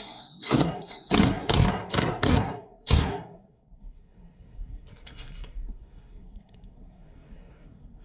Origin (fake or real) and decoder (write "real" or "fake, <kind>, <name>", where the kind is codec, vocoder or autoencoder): fake, codec, SNAC